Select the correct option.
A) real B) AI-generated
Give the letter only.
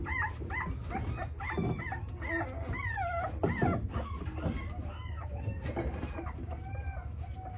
A